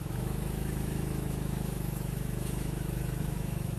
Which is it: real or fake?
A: fake